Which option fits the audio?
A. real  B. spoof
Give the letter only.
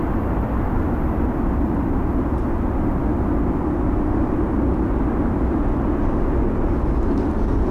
A